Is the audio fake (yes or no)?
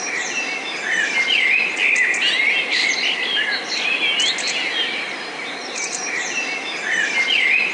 no